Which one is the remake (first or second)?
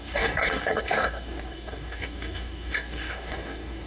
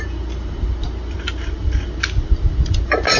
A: first